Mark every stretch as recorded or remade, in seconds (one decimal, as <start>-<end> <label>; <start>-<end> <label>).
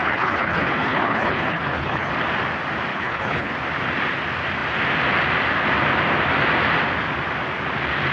0.0-2.1 remade; 2.1-2.9 recorded; 2.9-3.5 remade; 3.5-8.1 recorded